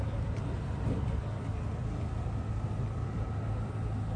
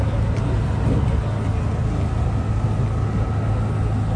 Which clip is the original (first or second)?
second